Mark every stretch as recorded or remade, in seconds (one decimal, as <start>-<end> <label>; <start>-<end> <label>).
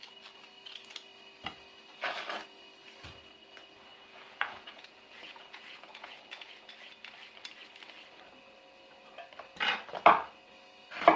0.0-4.1 recorded; 4.1-6.7 remade; 6.7-11.2 recorded